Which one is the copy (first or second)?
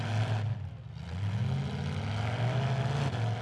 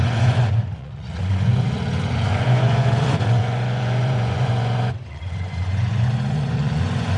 second